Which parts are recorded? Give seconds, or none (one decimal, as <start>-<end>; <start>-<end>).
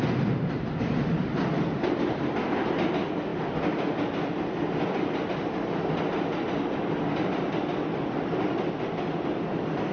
0.0-9.9